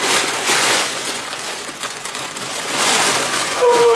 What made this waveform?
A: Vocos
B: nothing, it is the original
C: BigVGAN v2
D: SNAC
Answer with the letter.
A